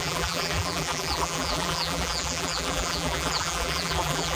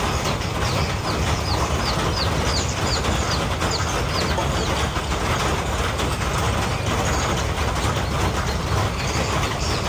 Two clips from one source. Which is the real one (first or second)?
second